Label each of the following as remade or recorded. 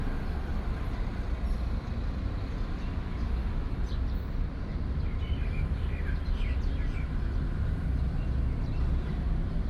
recorded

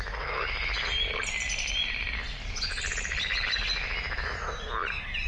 recorded